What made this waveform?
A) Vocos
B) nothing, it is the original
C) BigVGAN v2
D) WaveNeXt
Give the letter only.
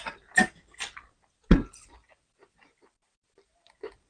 B